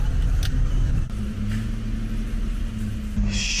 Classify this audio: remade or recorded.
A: recorded